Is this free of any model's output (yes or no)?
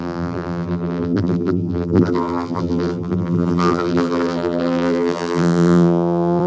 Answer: no